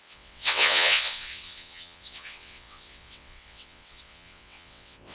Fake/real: fake